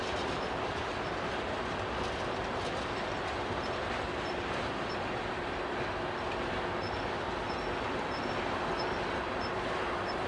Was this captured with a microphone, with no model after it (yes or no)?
yes